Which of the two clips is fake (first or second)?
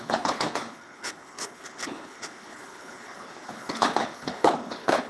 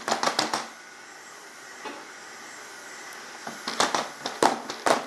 first